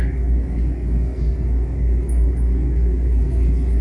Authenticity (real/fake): fake